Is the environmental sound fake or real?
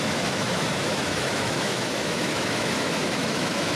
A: fake